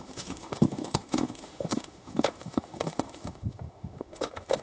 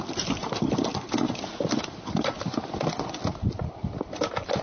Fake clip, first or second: first